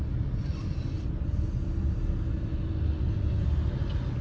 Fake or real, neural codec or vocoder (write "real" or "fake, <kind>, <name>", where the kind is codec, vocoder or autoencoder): real